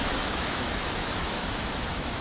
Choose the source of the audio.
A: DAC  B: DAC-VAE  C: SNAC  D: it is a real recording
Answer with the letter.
B